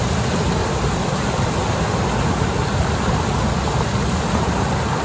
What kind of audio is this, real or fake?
real